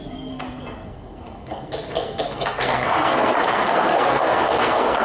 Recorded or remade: remade